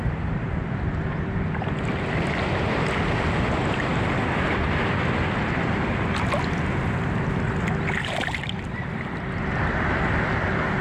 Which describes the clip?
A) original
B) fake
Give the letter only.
A